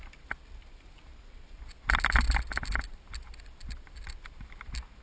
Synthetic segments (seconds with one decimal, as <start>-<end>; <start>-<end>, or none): none